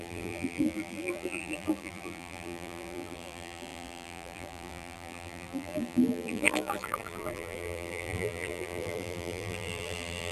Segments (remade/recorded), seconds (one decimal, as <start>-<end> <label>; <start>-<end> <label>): 0.0-10.3 remade